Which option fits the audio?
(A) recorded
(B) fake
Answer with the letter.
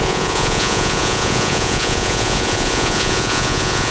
B